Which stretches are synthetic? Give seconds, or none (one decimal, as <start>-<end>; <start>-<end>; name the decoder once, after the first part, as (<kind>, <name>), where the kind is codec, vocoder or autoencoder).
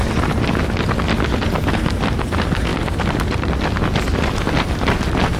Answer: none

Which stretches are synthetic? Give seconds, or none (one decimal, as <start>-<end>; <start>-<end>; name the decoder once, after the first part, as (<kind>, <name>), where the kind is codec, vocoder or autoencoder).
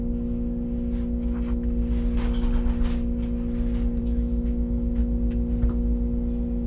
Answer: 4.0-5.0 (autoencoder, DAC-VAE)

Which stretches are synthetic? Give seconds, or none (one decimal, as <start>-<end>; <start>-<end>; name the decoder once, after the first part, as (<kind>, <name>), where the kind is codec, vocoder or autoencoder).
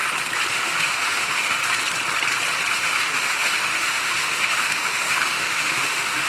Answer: 0.5-1.6 (autoencoder, DAC-VAE); 2.7-6.3